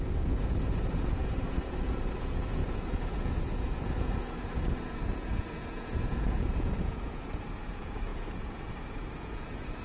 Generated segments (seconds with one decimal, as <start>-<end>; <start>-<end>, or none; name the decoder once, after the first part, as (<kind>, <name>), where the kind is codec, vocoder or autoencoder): 0.0-9.8 (vocoder, Vocos)

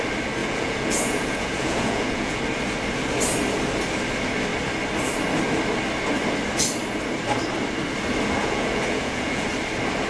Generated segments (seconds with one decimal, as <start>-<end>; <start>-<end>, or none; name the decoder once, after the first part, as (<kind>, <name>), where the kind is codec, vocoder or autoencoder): 0.4-2.4 (vocoder, Vocos); 8.4-9.5

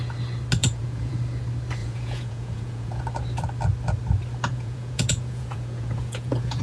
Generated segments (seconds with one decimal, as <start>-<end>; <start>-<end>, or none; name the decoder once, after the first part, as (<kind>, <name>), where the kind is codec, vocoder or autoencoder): 0.6-1.1 (vocoder, Vocos); 1.8-3.0; 4.5-6.6

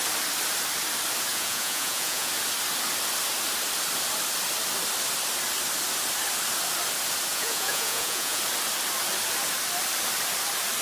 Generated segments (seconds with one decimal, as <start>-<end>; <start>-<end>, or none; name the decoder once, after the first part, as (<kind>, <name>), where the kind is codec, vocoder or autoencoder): 1.3-2.3 (vocoder, Vocos); 7.3-8.4

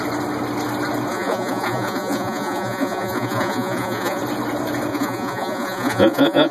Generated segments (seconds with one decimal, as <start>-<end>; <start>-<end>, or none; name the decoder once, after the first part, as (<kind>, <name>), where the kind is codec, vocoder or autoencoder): 1.1-4.2 (vocoder, Vocos); 4.9-6.5

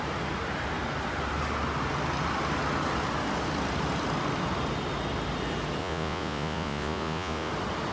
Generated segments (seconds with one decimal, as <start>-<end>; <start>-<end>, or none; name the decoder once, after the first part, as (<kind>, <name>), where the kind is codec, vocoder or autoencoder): 5.8-7.5 (vocoder, Vocos)